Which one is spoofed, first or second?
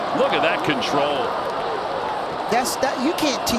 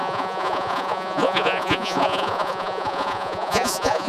second